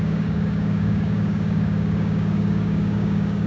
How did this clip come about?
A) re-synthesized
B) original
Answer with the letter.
A